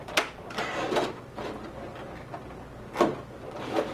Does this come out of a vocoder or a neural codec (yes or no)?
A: no